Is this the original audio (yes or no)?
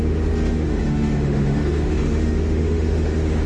no